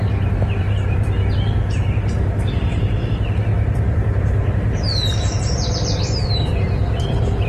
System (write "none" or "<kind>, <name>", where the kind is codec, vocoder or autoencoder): vocoder, BigVGAN v2